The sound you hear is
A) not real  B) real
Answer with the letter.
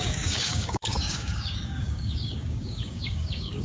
A